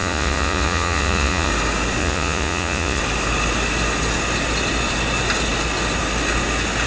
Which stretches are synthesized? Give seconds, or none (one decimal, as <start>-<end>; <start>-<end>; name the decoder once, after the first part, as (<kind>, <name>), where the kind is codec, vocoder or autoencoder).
0.0-1.5 (vocoder, Vocos); 2.0-3.0